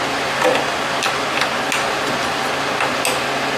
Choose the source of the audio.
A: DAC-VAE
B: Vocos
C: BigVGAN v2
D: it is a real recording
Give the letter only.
D